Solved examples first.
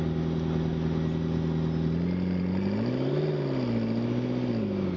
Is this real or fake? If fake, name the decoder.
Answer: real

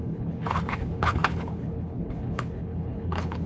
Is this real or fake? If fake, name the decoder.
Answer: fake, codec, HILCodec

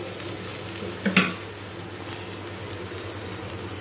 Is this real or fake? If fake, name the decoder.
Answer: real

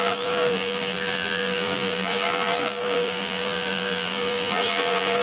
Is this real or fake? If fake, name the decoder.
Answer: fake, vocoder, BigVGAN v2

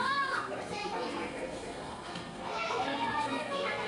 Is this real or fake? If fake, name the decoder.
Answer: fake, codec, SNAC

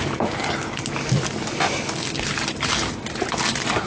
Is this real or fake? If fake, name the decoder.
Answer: real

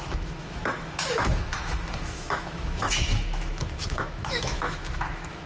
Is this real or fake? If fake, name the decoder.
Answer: fake, autoencoder, DAC-VAE